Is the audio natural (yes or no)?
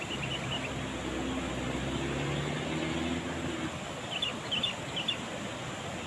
yes